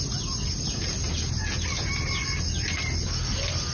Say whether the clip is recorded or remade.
recorded